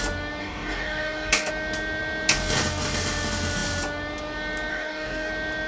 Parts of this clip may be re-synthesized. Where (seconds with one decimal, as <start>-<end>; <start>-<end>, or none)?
0.4-1.5; 4.7-5.3